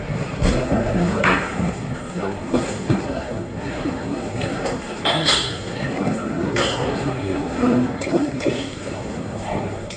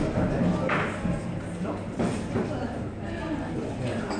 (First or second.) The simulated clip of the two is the first